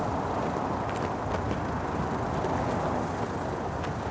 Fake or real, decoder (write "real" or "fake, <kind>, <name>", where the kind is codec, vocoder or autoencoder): real